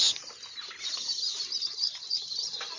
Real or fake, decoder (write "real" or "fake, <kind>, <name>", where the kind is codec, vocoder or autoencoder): real